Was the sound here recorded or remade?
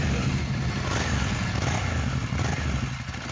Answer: recorded